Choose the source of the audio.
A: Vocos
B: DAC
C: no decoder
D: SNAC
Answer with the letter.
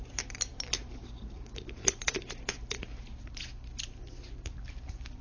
C